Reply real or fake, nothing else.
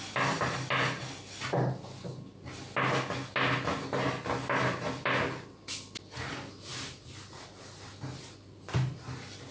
real